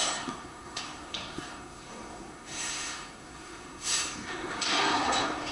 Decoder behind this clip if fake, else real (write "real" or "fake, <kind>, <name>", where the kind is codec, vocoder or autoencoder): fake, codec, SNAC